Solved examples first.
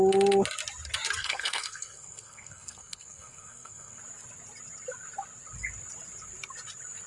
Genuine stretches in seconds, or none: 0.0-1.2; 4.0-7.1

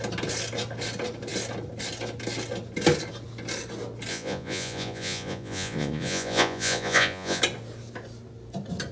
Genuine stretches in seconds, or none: 0.0-4.1; 7.4-8.9

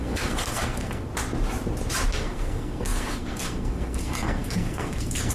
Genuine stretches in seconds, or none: 1.1-2.1